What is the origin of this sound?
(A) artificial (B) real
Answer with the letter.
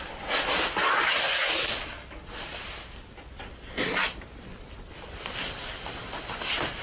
B